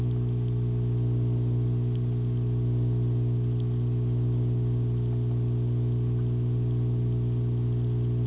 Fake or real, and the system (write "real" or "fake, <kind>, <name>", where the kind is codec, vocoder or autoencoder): real